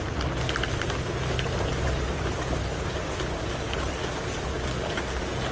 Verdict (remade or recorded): recorded